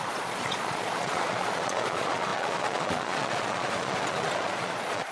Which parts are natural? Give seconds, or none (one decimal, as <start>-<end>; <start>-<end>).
none